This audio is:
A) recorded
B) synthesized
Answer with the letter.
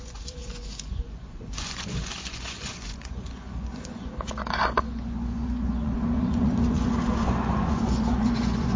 B